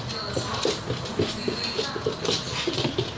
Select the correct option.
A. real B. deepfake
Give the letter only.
A